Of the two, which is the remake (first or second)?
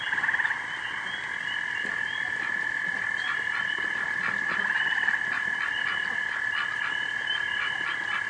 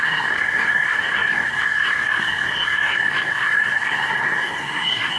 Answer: second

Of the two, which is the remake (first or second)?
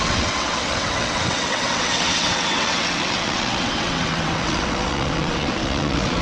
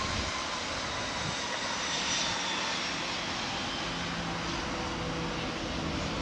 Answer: first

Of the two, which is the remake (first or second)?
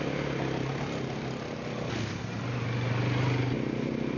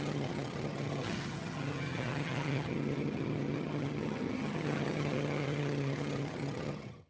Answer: second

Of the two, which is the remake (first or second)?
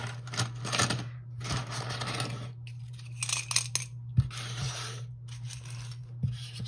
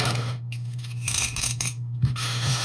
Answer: second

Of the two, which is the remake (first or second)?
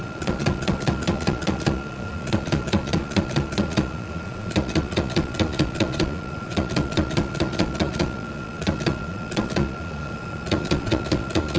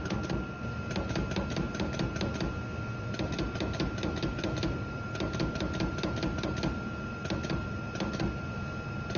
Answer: first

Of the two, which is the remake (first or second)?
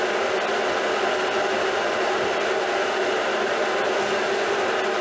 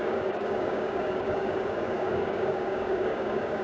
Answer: second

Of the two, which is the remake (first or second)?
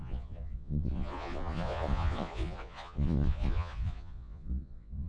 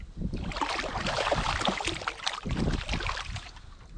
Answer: first